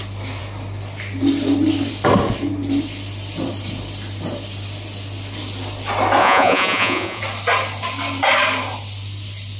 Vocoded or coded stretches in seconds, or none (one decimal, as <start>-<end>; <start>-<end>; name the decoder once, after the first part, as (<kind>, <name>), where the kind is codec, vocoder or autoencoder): 6.2-7.2 (vocoder, Vocos)